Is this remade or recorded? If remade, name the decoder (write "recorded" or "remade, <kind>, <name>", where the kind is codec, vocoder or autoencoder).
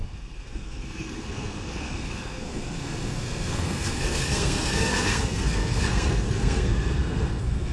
remade, codec, SNAC